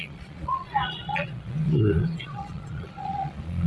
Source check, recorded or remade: remade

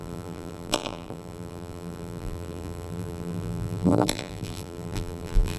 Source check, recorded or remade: remade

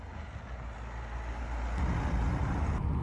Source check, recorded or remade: recorded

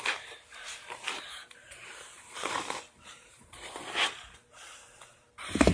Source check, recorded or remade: remade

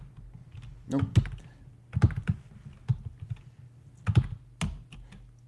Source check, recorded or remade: recorded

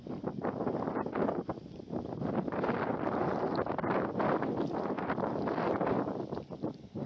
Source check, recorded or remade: recorded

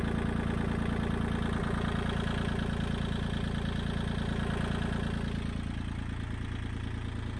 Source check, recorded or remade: recorded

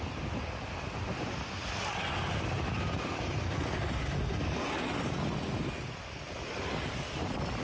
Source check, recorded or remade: recorded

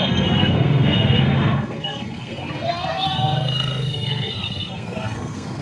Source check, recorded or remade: remade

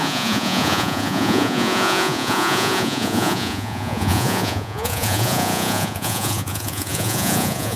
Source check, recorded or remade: remade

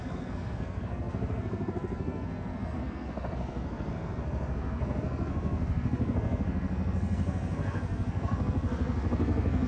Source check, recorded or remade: remade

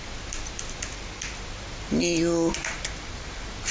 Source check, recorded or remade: recorded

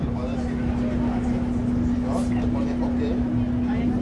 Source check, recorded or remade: recorded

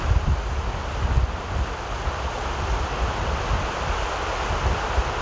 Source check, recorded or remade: recorded